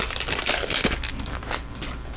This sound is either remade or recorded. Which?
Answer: recorded